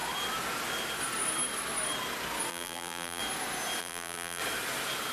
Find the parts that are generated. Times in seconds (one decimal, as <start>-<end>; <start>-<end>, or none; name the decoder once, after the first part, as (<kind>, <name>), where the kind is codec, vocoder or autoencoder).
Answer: 2.5-3.2 (vocoder, BigVGAN v2); 3.8-4.4